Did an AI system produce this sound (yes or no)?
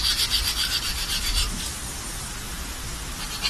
no